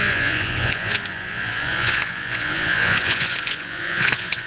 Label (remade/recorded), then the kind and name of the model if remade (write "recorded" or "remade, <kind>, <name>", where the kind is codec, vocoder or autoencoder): remade, vocoder, Vocos